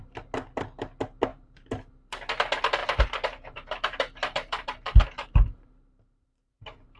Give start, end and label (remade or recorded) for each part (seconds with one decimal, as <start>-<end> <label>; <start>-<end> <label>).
0.0-1.3 recorded; 1.3-1.9 remade; 1.9-2.8 recorded; 2.8-7.0 remade